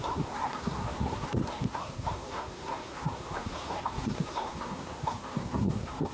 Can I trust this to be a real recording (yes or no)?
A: no